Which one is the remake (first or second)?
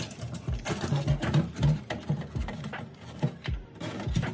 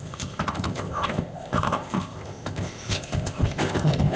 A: second